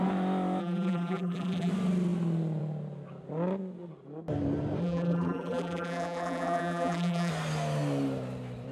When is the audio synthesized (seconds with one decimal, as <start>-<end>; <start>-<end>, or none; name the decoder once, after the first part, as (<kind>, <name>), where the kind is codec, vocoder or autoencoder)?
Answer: 0.6-1.7 (vocoder, BigVGAN v2); 4.8-7.3